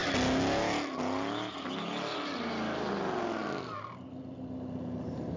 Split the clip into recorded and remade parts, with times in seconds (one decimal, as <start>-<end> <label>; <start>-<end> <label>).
0.0-5.4 recorded